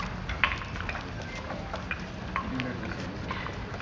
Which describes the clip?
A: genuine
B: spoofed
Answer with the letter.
A